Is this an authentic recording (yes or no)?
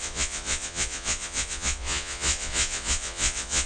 no